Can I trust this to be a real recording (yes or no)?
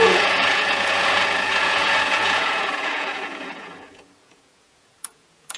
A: no